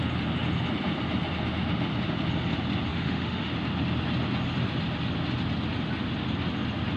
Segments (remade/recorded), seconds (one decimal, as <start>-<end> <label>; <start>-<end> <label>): 0.0-2.9 recorded; 2.9-3.5 remade; 3.5-7.0 recorded